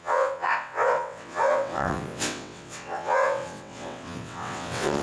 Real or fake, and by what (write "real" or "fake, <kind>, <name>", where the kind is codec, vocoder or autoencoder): fake, vocoder, WaveNeXt